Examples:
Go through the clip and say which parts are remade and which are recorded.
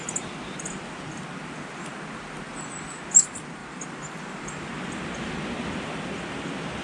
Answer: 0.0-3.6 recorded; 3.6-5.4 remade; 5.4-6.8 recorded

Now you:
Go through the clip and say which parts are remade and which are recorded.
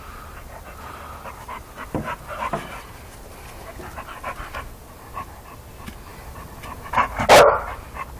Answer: 0.0-8.2 recorded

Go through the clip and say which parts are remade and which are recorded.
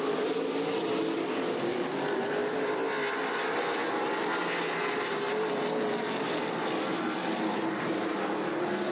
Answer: 0.0-7.5 recorded; 7.5-8.3 remade; 8.3-8.9 recorded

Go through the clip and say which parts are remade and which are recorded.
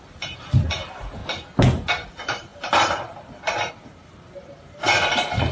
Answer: 0.0-1.2 remade; 1.2-2.1 recorded; 2.1-5.5 remade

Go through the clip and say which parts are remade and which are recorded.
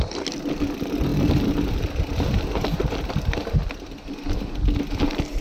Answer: 0.0-1.1 recorded; 1.1-1.7 remade; 1.7-5.4 recorded